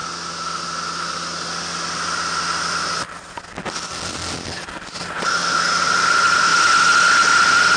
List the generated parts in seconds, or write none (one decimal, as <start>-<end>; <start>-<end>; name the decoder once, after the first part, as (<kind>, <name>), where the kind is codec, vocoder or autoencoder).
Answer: none